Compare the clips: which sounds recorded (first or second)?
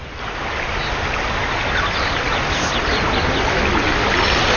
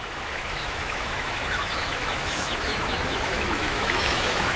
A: first